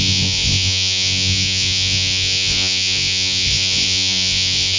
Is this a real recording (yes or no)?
no